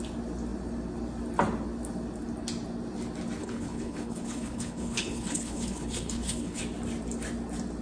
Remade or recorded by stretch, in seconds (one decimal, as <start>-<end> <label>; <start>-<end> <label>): 0.0-3.4 recorded; 3.4-6.6 remade; 6.6-7.8 recorded